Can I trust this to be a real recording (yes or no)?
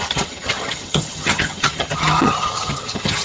no